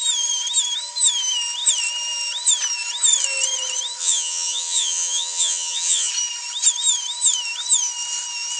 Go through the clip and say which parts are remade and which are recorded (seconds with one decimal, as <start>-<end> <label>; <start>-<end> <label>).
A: 0.0-4.0 recorded; 4.0-6.1 remade; 6.1-8.6 recorded